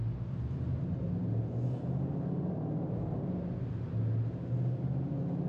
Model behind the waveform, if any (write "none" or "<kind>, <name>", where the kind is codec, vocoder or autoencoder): none